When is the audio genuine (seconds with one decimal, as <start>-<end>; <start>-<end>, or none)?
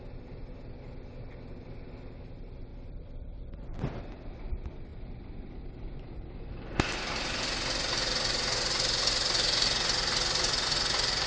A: 0.0-11.3